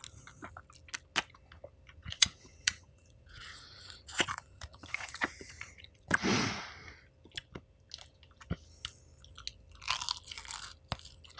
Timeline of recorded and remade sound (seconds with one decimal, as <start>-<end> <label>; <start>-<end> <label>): 0.0-2.0 recorded; 2.0-6.7 remade; 6.7-11.4 recorded